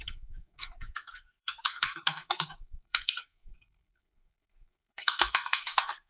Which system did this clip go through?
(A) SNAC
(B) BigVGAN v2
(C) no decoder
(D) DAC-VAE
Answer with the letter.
A